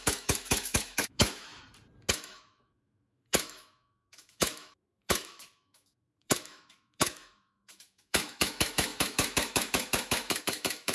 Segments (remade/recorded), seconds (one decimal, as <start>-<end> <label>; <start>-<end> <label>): 0.0-1.5 remade; 1.5-2.1 recorded; 2.1-10.9 remade